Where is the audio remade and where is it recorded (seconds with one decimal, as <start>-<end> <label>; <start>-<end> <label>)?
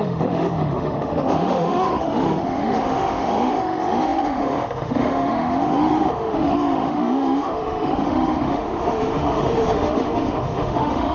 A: 0.0-11.1 remade